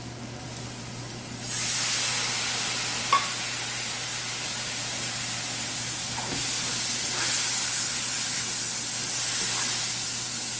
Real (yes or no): yes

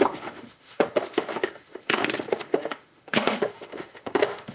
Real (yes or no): no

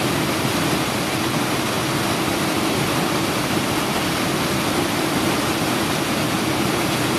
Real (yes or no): yes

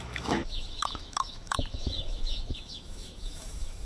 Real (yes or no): no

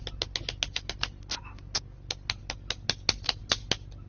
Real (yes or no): yes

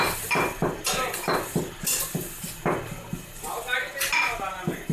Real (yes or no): yes